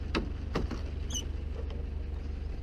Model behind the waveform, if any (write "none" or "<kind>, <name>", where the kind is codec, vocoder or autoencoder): none